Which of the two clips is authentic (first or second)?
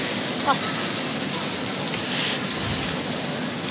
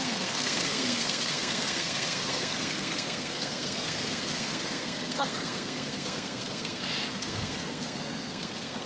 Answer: first